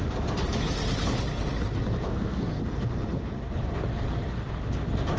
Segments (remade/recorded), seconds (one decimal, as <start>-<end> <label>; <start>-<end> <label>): 0.0-2.1 recorded; 2.1-2.6 remade; 2.6-5.2 recorded